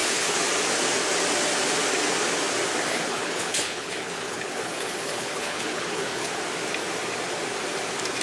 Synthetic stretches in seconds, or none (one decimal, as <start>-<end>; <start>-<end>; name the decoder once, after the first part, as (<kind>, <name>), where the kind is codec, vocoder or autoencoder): 0.0-0.5 (codec, HILCodec); 2.9-6.4